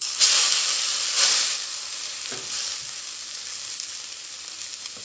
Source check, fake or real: real